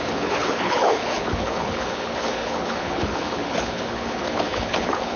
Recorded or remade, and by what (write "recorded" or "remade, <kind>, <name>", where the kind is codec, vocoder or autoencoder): remade, codec, HILCodec